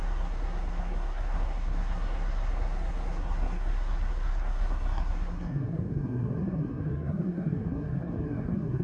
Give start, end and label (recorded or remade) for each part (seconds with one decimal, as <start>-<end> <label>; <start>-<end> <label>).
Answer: 0.0-8.8 remade